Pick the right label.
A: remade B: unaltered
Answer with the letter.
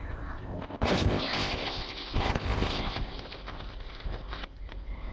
A